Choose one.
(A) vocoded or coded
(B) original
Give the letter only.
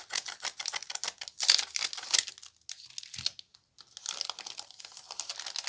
B